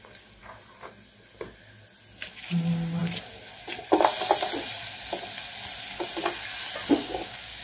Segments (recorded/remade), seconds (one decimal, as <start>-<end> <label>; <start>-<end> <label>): 0.0-7.0 recorded; 7.0-7.6 remade